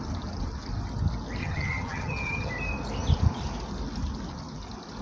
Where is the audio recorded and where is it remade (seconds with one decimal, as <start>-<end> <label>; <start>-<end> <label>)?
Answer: 0.0-1.4 recorded; 1.4-2.5 remade; 2.5-5.0 recorded